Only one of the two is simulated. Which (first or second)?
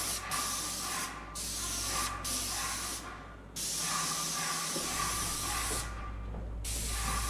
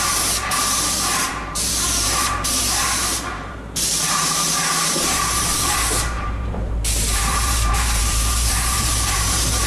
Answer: second